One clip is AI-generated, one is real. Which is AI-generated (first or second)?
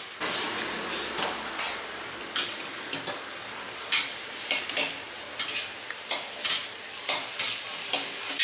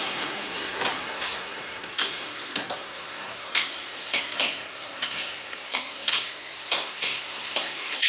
second